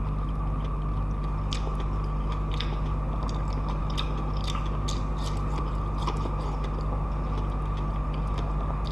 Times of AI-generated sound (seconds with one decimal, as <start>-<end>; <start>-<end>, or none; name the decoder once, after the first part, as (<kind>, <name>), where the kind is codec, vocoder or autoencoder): none